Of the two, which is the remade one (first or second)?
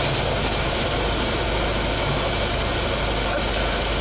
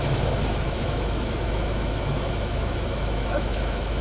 second